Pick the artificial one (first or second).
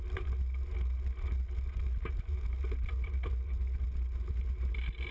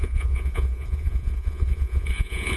second